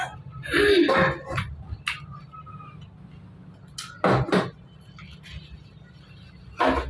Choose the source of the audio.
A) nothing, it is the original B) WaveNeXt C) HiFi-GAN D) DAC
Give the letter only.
A